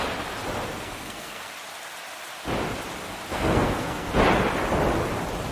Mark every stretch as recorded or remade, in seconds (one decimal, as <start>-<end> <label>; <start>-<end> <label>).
0.0-0.7 recorded; 0.7-1.5 remade; 1.5-3.3 recorded; 3.3-4.1 remade; 4.1-5.5 recorded